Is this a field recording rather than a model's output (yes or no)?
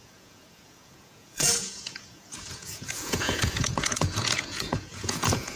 no